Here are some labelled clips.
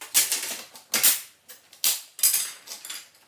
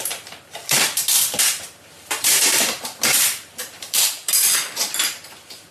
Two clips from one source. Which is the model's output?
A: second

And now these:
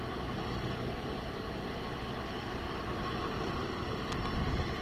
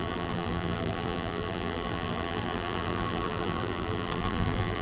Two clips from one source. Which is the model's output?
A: second